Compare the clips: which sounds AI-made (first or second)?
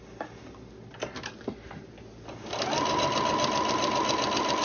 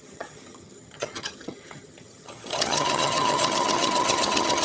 second